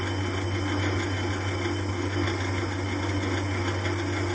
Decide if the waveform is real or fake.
real